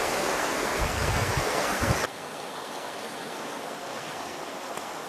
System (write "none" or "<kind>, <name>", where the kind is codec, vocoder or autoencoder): codec, SNAC